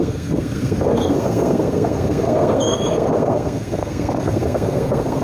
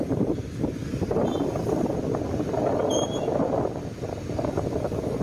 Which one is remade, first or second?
first